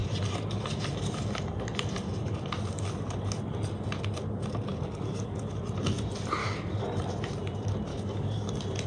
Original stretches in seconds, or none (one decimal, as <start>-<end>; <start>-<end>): 0.0-4.7; 5.6-6.4; 7.0-7.9; 8.5-8.9